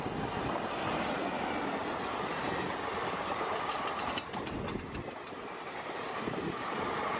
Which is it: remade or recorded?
recorded